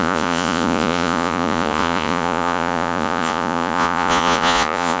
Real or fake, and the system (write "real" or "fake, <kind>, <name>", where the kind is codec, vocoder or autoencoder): fake, vocoder, Vocos